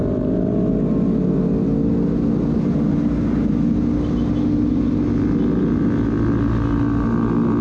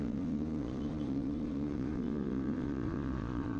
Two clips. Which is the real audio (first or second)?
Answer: first